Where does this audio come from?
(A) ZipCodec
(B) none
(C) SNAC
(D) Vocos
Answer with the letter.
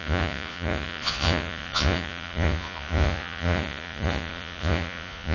D